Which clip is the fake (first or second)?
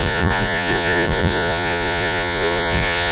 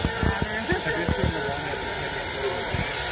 first